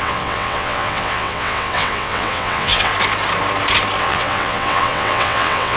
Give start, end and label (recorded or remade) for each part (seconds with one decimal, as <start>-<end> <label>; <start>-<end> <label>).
0.0-2.9 remade; 2.9-4.0 recorded; 4.0-5.8 remade